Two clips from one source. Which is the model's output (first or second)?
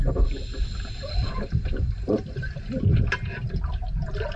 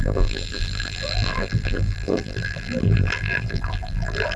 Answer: second